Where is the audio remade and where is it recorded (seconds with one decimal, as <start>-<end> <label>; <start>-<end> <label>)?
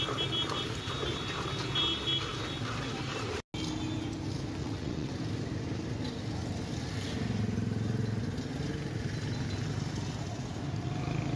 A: 0.0-4.6 recorded; 4.6-5.1 remade; 5.1-11.4 recorded